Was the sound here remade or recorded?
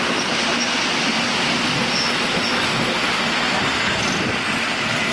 recorded